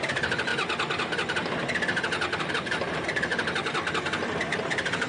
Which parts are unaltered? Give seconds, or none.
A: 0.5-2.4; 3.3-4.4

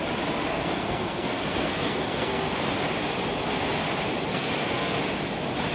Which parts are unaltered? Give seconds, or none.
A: 0.0-0.5; 2.7-4.3; 5.0-5.7

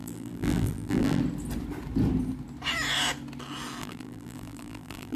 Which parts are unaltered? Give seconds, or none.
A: 1.2-3.8

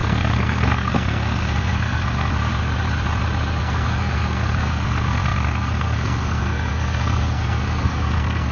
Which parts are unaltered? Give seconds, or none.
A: 2.5-3.6

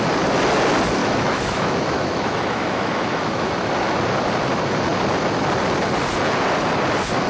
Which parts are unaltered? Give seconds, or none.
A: 0.0-1.0; 3.7-7.3

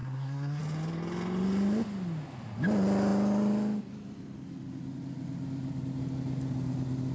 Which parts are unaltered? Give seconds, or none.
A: 0.6-7.1

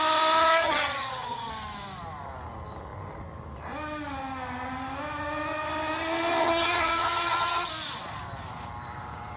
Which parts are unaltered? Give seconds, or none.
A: 0.0-0.6; 1.5-6.4; 7.7-9.4

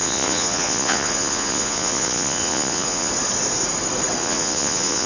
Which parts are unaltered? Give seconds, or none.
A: 3.1-4.2